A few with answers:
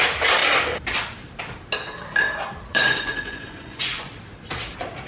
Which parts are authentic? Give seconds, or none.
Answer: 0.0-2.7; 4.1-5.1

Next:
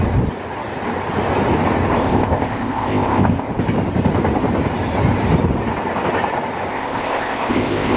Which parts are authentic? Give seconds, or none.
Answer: 0.0-2.0; 3.5-6.7

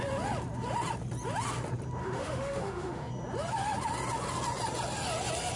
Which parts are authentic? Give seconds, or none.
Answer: 0.0-2.0; 3.1-5.6

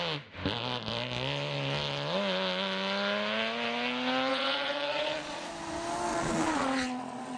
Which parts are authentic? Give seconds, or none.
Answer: 0.0-4.3; 5.5-6.1